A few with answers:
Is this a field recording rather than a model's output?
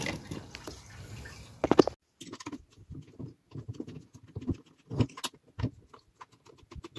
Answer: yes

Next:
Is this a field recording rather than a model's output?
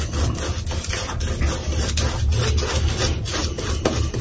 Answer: yes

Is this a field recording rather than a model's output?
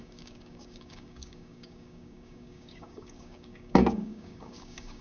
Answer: no